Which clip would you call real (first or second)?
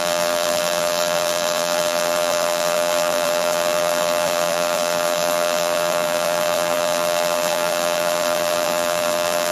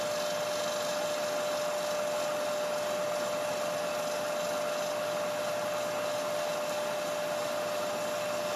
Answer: second